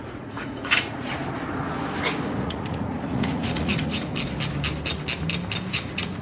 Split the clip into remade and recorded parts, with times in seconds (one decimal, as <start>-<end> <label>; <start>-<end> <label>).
0.0-1.2 remade; 1.2-2.4 recorded; 2.4-4.1 remade; 4.1-5.7 recorded; 5.7-6.2 remade